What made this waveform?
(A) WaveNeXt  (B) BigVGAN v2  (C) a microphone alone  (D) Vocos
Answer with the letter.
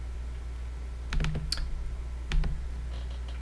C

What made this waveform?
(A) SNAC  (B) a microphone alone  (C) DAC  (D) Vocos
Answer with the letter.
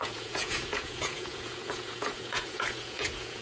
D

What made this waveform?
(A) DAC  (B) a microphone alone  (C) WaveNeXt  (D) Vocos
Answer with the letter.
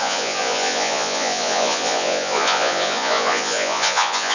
D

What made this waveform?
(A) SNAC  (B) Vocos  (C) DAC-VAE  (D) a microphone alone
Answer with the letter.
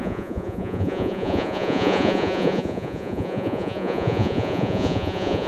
B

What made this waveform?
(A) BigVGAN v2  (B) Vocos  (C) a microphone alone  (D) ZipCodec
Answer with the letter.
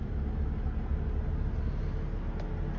C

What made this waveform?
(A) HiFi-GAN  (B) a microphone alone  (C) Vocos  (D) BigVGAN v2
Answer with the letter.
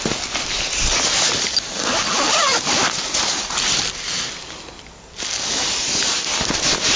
B